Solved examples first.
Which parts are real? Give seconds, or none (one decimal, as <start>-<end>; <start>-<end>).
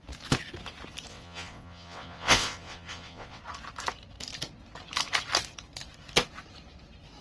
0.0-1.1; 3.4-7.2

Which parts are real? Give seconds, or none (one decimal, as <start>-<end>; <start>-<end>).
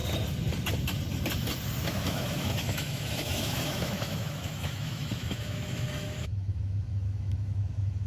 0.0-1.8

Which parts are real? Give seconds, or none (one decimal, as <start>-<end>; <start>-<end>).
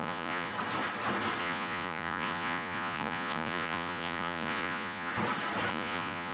0.5-1.4; 5.1-5.7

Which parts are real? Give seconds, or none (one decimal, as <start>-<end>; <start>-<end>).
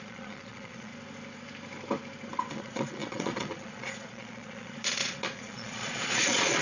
0.9-2.5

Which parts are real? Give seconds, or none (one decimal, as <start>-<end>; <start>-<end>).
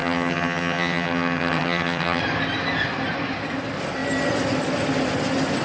2.2-5.6